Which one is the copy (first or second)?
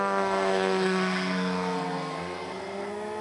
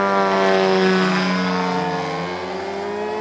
first